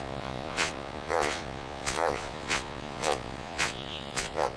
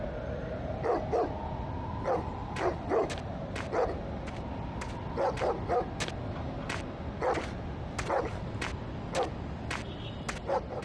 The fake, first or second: first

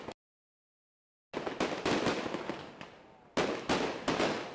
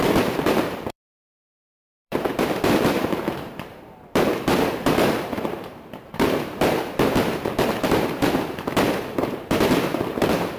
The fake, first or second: second